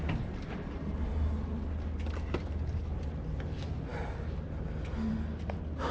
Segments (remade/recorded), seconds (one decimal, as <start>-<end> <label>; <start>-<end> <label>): 0.0-5.9 recorded